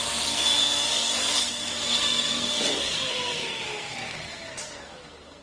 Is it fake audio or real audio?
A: fake